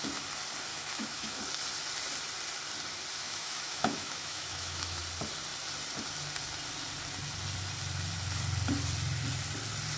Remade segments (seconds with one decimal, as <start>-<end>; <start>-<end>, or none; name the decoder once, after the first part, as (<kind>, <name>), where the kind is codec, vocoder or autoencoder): 0.7-1.4 (autoencoder, DAC-VAE); 3.2-5.0